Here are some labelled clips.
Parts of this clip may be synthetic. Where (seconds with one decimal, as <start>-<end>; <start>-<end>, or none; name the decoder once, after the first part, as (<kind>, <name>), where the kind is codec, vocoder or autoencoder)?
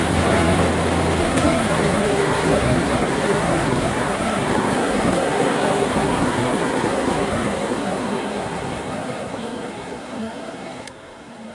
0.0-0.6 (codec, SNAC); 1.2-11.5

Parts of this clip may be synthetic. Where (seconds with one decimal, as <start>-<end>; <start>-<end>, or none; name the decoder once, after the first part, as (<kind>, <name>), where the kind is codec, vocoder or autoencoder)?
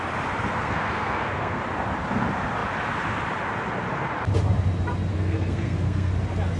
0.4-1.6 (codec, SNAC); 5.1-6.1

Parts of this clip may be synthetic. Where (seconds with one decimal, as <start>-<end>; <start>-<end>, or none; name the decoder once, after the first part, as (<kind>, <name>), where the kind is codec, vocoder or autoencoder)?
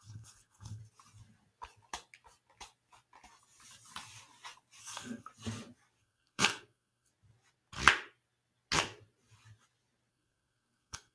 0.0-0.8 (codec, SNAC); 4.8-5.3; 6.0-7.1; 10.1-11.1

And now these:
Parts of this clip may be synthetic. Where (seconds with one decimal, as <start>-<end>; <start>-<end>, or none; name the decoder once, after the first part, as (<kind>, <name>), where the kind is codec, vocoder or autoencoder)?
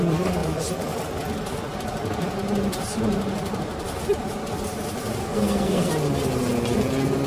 5.2-5.9 (codec, SNAC)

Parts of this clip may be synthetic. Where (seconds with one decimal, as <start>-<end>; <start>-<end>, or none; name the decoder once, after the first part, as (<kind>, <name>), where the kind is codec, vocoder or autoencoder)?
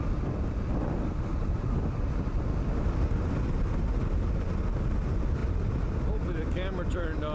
none